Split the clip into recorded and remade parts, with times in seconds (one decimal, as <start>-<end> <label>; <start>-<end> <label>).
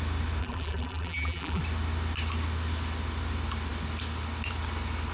0.0-0.4 recorded; 0.4-1.6 remade; 1.6-5.1 recorded